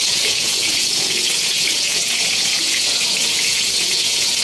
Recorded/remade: remade